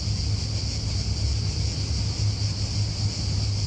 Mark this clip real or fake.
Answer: real